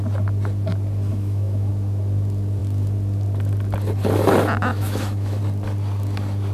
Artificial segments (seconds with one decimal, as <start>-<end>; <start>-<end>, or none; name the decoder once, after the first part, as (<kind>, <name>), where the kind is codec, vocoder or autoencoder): 1.1-1.7 (autoencoder, DAC-VAE); 4.7-5.4